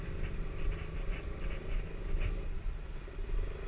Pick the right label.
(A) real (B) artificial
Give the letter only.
A